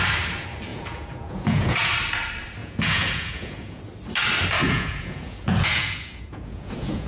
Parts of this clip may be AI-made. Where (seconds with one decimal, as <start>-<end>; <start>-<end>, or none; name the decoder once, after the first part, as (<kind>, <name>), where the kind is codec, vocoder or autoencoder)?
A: 0.7-1.9 (vocoder, Vocos); 2.6-3.8; 4.6-7.1